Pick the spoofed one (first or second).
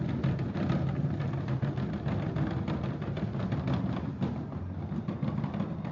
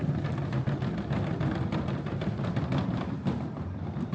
second